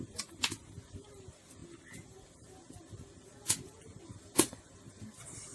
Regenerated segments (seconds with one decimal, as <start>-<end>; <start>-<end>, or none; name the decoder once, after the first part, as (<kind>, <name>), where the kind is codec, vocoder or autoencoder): none